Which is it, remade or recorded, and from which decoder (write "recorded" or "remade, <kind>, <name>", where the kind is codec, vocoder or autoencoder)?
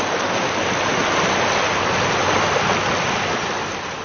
recorded